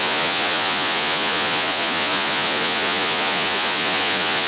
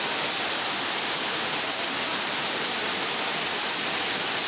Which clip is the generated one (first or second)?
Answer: first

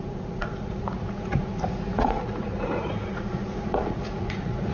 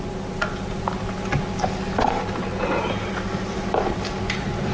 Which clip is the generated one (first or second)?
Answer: first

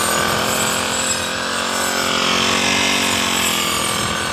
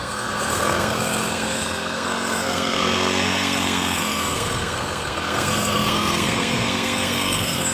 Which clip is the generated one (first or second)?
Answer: second